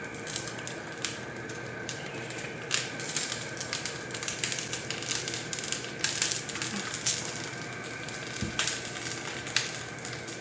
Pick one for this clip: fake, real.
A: real